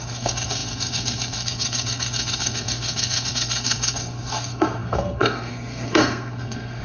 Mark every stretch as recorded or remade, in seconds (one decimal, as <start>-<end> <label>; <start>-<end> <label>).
0.0-6.8 remade